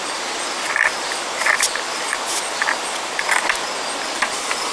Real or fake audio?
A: fake